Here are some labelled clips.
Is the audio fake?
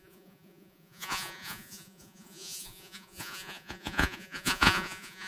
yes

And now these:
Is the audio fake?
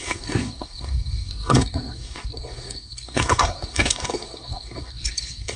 yes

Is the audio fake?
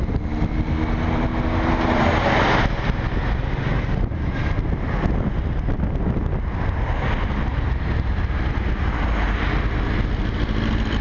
no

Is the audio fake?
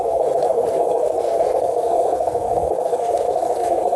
yes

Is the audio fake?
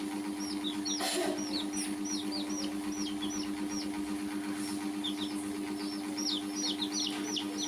no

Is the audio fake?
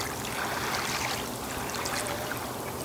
no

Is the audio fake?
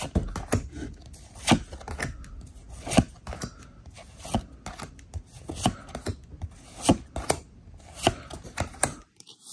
no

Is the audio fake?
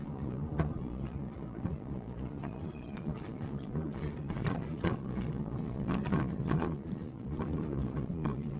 yes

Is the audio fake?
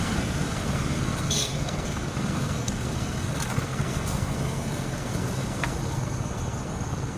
yes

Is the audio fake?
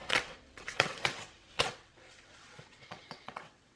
yes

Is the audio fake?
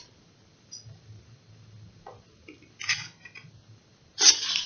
no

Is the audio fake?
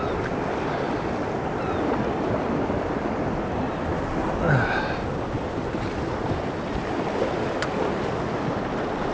no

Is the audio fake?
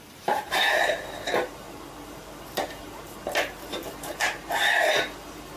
yes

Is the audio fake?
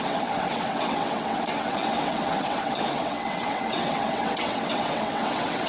yes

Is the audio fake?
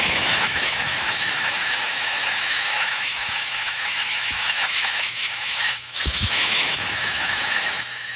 yes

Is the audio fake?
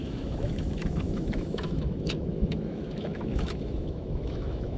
yes